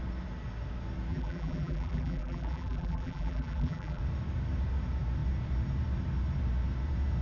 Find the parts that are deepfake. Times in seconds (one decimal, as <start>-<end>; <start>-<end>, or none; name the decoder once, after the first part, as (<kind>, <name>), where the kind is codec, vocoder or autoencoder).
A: 1.1-4.0 (vocoder, BigVGAN v2)